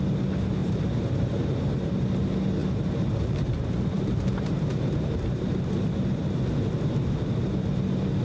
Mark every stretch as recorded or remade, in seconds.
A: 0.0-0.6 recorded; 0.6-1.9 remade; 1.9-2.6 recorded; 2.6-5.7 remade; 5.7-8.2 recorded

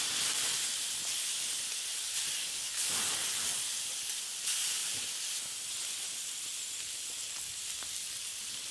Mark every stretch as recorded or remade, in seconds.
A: 0.0-4.8 remade; 4.8-7.5 recorded; 7.5-8.7 remade

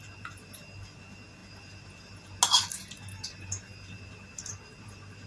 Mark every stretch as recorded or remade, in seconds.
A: 0.0-1.4 recorded; 1.4-2.4 remade; 2.4-5.3 recorded

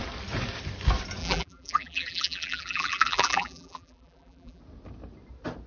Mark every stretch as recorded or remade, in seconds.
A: 0.0-1.2 recorded; 1.2-4.6 remade; 4.6-5.7 recorded